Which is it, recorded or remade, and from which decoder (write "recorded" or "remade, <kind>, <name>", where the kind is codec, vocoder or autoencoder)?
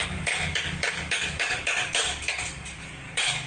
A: remade, codec, DAC